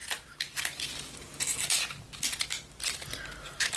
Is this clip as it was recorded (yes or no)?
yes